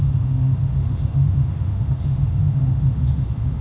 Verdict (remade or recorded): remade